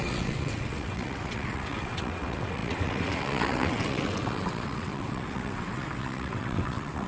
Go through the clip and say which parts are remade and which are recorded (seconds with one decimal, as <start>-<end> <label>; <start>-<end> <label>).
0.0-7.1 remade